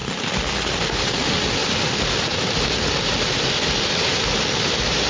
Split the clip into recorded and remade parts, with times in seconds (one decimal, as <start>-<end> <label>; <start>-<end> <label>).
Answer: 0.0-5.1 recorded